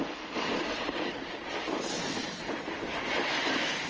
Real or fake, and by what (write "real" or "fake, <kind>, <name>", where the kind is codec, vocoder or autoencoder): real